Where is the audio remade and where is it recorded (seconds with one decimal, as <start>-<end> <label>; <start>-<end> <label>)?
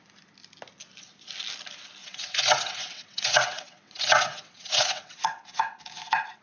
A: 0.0-2.0 recorded; 2.0-5.8 remade; 5.8-6.4 recorded